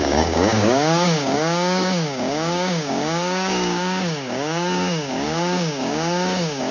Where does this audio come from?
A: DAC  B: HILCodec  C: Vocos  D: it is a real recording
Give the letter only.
A